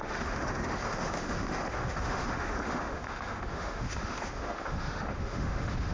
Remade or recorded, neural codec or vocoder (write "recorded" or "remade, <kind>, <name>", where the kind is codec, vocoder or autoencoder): remade, autoencoder, DAC-VAE